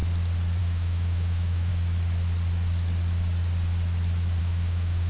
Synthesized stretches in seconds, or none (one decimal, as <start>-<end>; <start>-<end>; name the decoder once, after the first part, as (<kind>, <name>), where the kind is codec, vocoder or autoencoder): 0.6-1.7 (autoencoder, DAC-VAE); 4.4-5.1